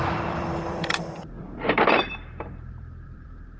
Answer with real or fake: fake